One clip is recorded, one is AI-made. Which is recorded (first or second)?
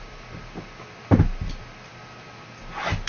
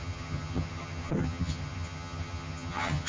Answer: first